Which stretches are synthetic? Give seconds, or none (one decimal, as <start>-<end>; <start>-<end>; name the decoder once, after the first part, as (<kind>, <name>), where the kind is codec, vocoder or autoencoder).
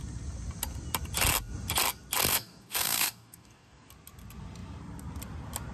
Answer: 2.3-3.9 (codec, DAC)